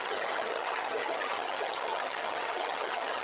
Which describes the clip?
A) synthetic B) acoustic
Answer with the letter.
A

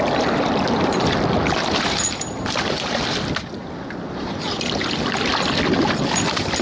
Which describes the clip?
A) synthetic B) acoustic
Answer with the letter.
B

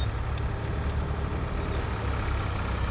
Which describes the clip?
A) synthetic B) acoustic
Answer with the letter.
B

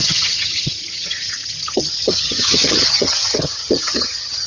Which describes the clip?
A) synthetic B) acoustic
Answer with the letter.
A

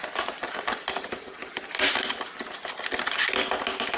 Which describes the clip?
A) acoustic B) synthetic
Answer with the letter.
A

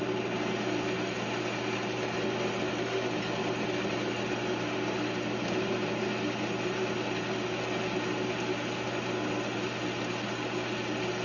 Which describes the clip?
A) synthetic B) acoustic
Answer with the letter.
B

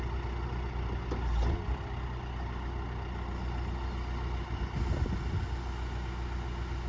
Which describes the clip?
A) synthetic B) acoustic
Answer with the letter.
B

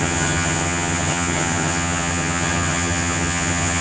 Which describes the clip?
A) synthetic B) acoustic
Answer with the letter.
A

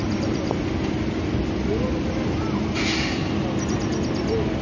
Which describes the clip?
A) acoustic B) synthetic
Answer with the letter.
A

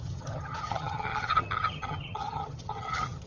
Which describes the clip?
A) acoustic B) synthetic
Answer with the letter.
B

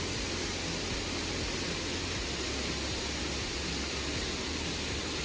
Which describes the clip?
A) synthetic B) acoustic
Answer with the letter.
B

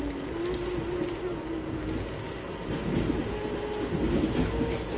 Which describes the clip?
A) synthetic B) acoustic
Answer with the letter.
B